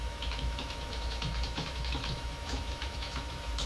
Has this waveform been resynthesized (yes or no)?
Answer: yes